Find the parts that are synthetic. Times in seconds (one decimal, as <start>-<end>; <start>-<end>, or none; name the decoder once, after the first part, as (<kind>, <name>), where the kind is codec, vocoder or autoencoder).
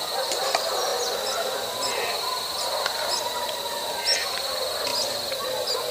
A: none